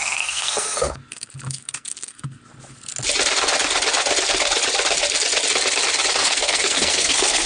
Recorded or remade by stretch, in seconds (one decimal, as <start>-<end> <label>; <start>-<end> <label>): 0.0-2.4 remade; 2.4-6.1 recorded; 6.1-7.5 remade